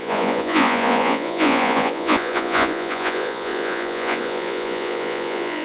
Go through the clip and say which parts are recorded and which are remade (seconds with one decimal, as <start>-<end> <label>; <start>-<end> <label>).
0.0-5.6 remade